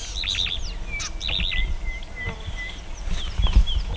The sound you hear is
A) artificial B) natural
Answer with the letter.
B